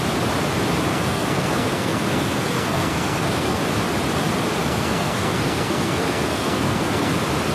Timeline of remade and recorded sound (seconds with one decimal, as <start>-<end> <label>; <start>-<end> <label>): 0.0-0.9 recorded; 0.9-3.6 remade; 3.6-4.6 recorded; 4.6-7.1 remade; 7.1-7.5 recorded